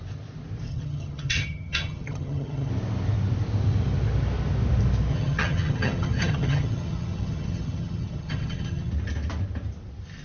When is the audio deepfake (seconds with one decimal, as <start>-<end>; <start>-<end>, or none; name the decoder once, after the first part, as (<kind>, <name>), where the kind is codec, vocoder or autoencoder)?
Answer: 0.7-2.7 (vocoder, HiFi-GAN); 5.1-8.9